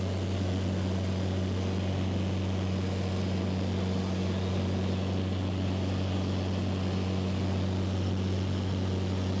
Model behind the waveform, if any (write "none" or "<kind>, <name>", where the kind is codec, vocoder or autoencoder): none